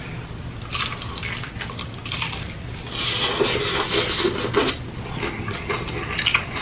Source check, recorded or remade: recorded